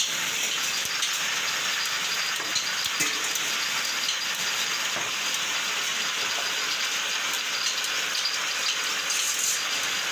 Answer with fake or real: real